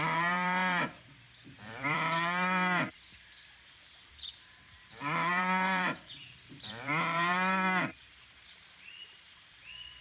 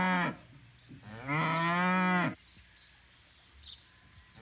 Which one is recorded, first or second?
second